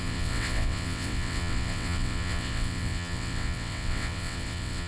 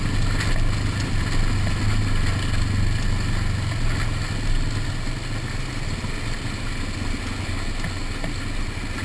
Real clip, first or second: second